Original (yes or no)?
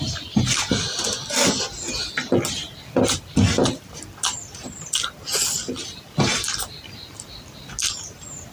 yes